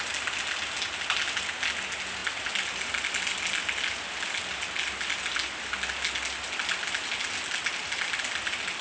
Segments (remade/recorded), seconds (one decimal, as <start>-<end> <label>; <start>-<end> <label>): 0.0-8.8 recorded